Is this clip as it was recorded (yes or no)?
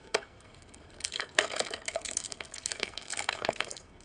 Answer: no